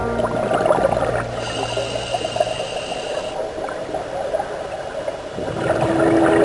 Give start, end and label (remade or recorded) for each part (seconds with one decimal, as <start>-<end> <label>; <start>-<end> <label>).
0.0-6.4 recorded